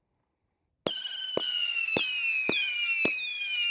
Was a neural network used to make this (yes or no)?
no